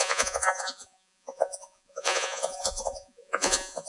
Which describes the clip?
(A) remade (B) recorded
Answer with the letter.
A